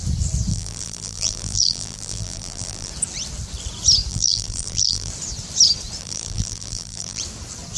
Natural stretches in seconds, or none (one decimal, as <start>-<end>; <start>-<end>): 0.0-0.5; 2.9-4.1; 5.1-6.0; 7.2-7.8